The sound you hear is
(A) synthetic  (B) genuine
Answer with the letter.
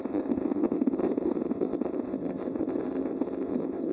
A